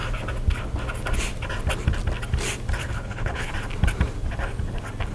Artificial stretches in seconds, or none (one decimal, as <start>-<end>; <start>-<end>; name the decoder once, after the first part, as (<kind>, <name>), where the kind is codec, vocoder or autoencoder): 2.8-3.5 (codec, HILCodec)

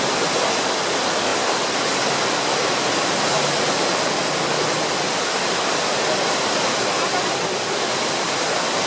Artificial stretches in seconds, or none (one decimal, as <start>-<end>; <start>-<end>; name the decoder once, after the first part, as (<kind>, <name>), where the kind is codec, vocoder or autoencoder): none

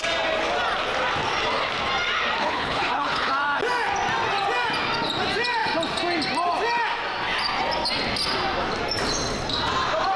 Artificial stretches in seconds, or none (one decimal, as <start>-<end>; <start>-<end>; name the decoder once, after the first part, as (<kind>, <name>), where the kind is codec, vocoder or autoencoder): 2.4-3.3 (codec, HILCodec)

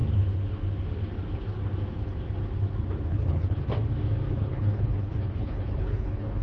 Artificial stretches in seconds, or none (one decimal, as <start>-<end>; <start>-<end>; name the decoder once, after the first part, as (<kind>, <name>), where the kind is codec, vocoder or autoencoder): 3.1-3.7 (codec, HILCodec); 4.3-6.4

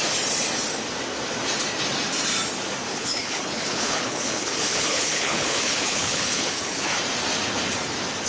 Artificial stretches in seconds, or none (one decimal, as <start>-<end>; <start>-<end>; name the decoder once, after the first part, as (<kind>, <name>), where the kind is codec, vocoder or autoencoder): 2.9-7.0 (codec, HILCodec)

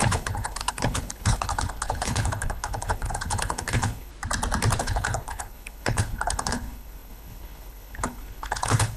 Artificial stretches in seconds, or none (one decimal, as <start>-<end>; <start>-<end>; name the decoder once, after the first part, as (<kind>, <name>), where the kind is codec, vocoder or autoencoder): 0.0-4.1 (codec, HILCodec); 4.8-9.0

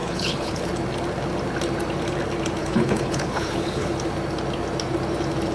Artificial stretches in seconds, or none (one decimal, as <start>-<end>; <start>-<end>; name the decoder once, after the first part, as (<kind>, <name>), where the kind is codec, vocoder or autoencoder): 0.0-0.7 (codec, HILCodec); 2.6-3.9